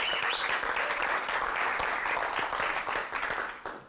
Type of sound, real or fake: real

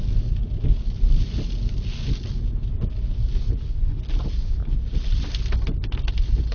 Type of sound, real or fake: real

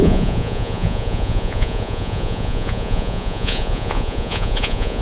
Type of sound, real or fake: fake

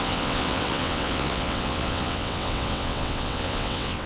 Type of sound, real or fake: fake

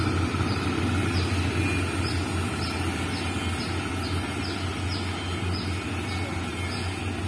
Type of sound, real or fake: real